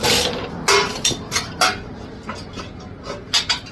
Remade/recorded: recorded